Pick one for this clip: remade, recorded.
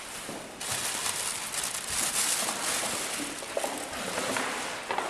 recorded